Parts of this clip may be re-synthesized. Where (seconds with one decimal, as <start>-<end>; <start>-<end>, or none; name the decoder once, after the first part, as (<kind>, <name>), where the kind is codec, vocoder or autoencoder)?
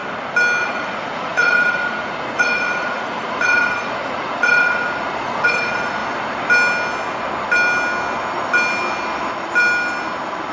0.6-6.0 (vocoder, Vocos)